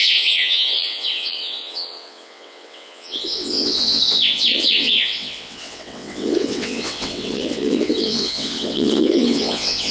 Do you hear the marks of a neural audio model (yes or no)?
yes